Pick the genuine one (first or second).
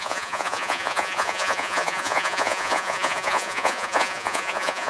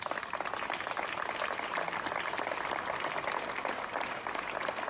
second